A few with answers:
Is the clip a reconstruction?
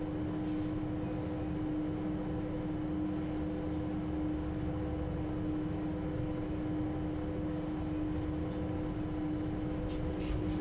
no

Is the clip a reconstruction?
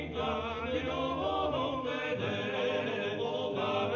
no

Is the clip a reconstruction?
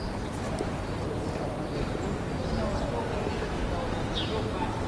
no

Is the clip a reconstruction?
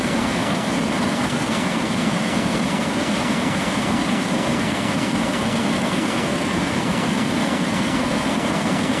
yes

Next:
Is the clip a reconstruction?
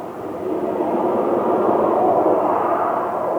no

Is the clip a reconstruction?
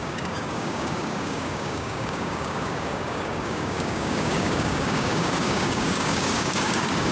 yes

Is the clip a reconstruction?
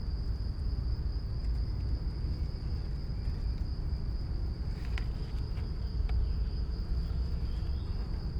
no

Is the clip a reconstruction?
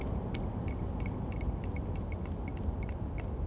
no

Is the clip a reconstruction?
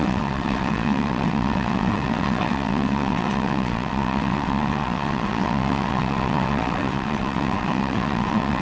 yes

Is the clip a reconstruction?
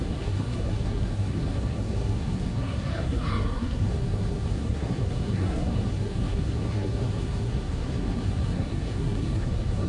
yes